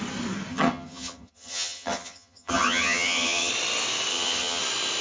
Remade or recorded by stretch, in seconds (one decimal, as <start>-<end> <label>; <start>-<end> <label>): 0.0-0.5 recorded; 0.5-3.5 remade; 3.5-4.1 recorded; 4.1-4.6 remade; 4.6-5.0 recorded